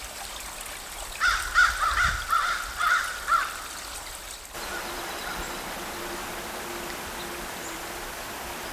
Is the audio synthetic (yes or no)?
no